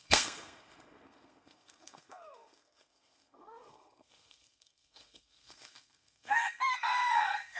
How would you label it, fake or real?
fake